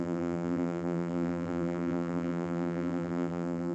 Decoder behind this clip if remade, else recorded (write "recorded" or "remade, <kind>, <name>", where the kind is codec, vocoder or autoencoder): remade, vocoder, BigVGAN v2